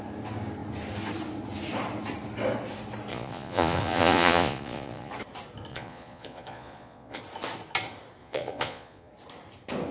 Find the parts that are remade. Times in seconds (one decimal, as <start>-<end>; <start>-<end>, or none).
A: 3.1-5.1; 5.7-7.2; 8.2-9.1